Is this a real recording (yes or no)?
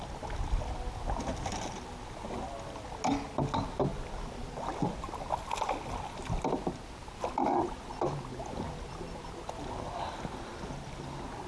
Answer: yes